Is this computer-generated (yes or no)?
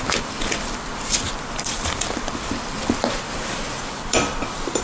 yes